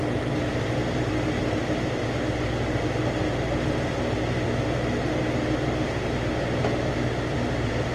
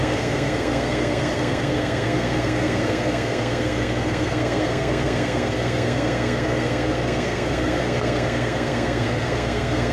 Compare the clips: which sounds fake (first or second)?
second